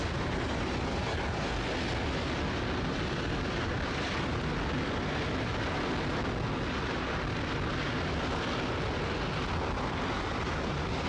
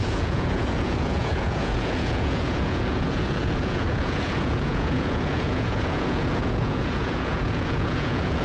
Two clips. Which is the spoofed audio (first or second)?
second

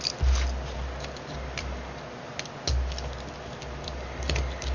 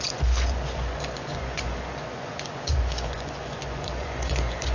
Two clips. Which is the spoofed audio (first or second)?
second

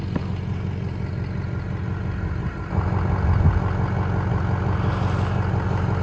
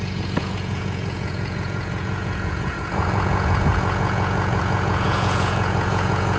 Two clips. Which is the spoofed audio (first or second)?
second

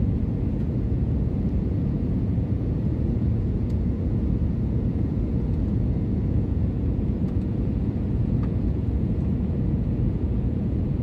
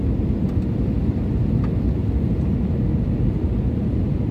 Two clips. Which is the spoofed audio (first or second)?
first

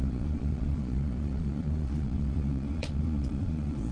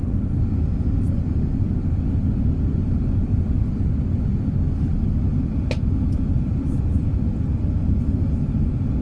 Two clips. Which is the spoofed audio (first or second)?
first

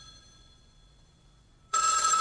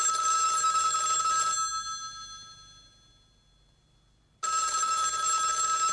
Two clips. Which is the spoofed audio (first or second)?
first